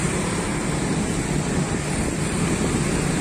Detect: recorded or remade recorded